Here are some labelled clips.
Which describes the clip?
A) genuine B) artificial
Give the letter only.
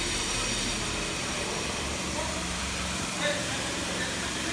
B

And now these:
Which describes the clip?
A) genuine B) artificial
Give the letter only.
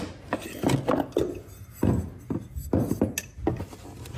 A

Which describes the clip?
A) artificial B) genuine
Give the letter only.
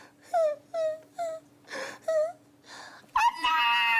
B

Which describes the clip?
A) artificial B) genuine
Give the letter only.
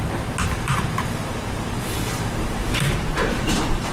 A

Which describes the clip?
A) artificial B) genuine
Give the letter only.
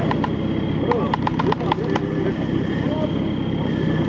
B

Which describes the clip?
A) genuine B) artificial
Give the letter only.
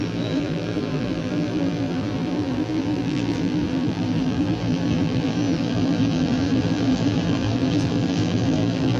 B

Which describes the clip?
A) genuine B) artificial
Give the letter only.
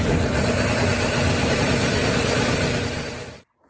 B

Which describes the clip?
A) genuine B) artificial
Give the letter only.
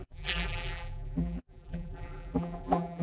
B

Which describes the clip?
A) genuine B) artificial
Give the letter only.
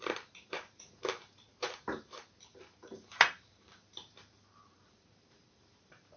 B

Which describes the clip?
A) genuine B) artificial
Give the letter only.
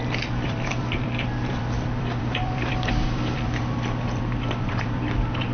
B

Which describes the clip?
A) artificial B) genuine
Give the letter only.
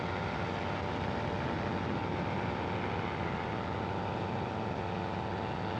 B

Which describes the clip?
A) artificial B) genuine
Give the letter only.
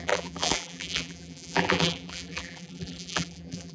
A